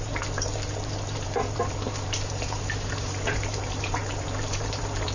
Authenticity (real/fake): fake